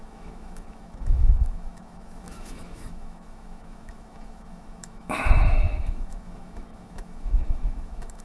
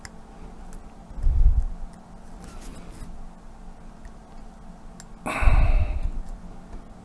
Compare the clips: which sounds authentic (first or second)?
second